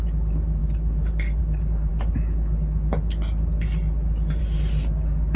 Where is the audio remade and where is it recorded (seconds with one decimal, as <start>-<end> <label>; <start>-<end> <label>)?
0.0-5.4 recorded